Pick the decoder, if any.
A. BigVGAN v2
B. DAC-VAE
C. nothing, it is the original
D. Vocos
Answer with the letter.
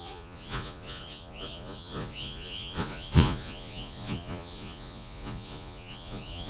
D